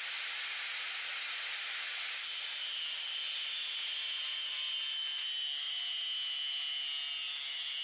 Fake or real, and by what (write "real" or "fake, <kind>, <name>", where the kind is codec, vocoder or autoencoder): real